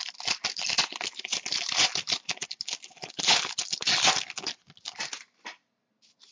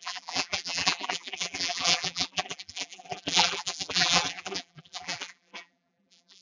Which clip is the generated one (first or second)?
second